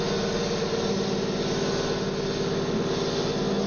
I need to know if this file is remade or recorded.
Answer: recorded